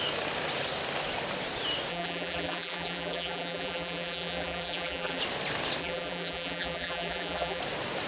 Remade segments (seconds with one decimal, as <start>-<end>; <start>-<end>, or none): 1.9-5.2; 5.8-7.6